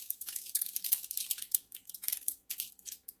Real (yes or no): no